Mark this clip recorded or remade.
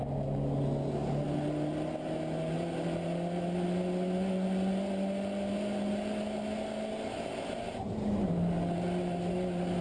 recorded